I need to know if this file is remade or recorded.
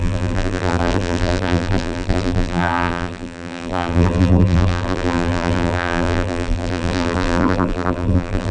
remade